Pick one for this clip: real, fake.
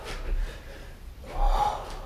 real